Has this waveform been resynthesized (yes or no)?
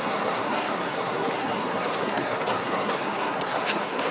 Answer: yes